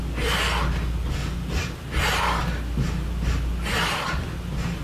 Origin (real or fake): real